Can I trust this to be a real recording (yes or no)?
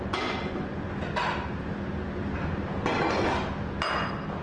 yes